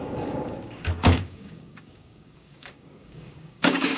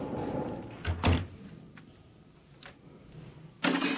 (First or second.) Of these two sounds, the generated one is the first